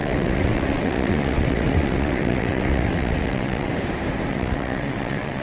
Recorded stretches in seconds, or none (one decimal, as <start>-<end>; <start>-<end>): 3.7-4.3